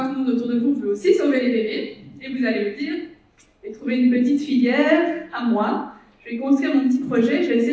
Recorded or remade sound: recorded